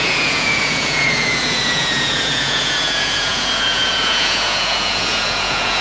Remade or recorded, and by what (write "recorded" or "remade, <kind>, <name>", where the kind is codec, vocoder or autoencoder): remade, vocoder, Vocos